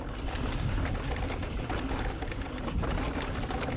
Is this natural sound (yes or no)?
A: yes